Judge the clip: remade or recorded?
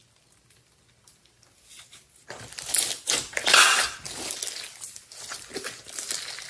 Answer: recorded